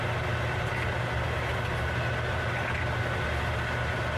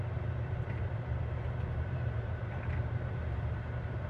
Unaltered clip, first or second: first